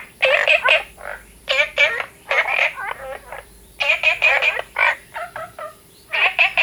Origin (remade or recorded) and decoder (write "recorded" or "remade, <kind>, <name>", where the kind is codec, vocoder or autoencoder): remade, vocoder, BigVGAN v2